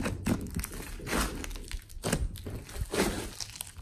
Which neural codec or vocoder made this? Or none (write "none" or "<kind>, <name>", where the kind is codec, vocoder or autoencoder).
none